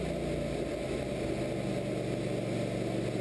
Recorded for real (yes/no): yes